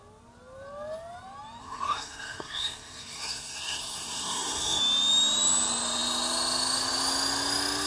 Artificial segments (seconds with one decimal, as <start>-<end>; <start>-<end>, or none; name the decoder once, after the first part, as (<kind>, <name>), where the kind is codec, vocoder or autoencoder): 1.6-4.8 (codec, SNAC)